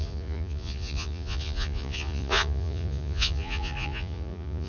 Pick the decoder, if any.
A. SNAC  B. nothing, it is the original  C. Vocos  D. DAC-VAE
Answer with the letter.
C